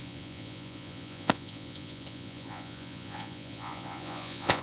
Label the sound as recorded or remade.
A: remade